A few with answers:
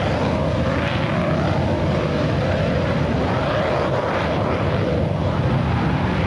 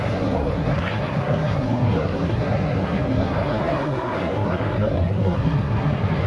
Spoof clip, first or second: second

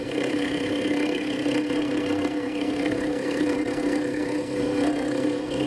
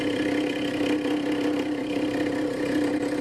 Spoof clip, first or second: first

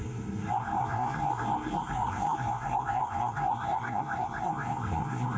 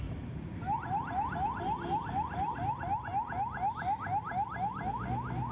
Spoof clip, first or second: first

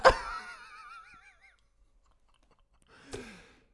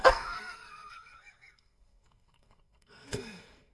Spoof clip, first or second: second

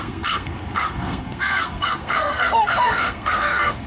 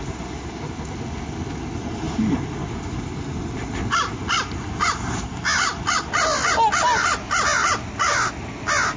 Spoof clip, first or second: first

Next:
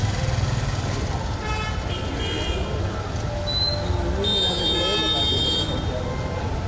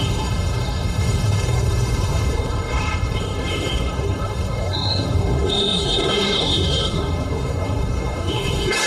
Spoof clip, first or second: second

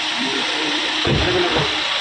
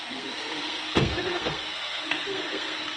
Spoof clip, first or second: second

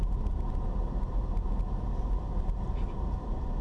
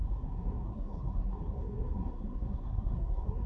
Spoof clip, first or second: second